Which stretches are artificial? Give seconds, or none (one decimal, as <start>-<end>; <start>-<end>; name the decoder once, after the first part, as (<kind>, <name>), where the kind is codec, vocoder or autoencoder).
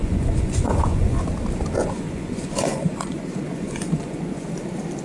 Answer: 0.0-1.3 (vocoder, Vocos); 1.8-4.5